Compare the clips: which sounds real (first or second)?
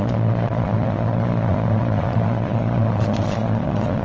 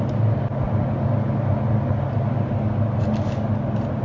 second